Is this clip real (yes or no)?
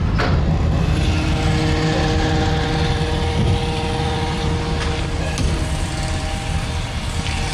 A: yes